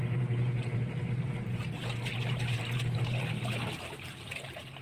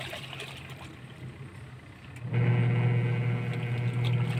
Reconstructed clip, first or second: first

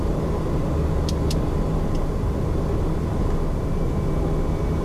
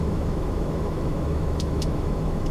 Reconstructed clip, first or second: second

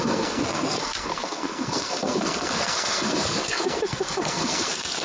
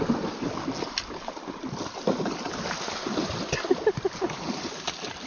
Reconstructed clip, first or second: first